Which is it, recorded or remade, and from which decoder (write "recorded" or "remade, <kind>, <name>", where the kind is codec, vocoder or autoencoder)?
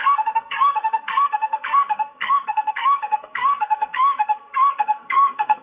remade, codec, SNAC